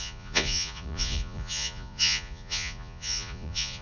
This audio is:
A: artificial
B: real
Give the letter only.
A